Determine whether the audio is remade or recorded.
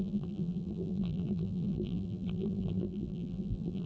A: remade